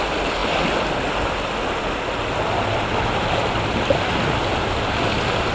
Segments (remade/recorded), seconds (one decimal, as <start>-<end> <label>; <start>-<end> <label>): 0.0-5.5 recorded